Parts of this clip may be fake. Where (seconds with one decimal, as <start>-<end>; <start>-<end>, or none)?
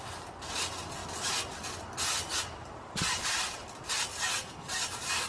1.0-3.9